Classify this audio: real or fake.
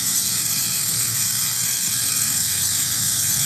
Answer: fake